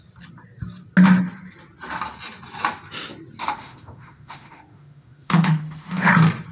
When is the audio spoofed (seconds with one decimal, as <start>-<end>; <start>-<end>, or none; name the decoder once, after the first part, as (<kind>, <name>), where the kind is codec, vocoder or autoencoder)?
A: 3.4-6.1 (autoencoder, DAC-VAE)